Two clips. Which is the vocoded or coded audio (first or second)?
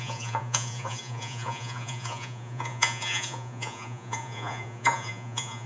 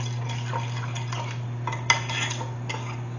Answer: first